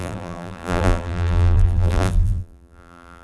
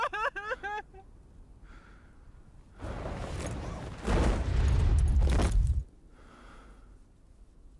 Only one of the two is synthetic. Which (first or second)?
first